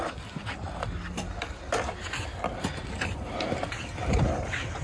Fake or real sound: real